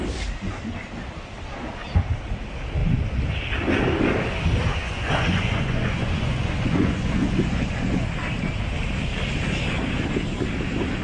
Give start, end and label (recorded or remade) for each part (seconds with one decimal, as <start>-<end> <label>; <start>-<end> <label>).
0.0-4.8 recorded; 4.8-8.1 remade; 8.1-11.0 recorded